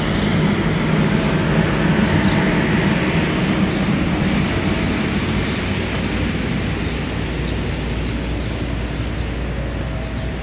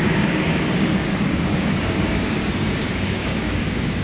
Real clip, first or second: first